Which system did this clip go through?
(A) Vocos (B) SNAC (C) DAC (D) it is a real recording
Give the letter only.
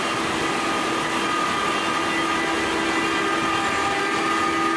D